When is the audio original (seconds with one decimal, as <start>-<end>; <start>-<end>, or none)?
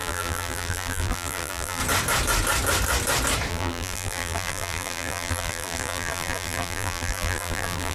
1.8-3.5